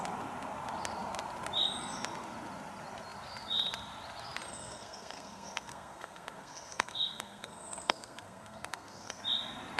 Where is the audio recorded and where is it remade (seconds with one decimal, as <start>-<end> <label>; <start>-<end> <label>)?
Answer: 0.0-4.5 recorded; 4.5-9.2 remade; 9.2-9.8 recorded